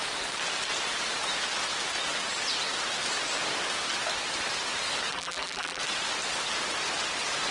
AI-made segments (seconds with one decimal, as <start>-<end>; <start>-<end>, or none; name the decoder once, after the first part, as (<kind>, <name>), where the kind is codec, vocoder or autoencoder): 5.1-5.8 (vocoder, BigVGAN v2)